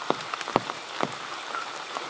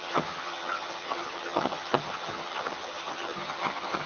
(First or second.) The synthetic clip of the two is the second